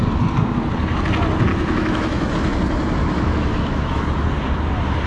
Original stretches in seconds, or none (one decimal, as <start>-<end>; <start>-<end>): 0.0-1.5; 2.3-3.0; 4.0-5.1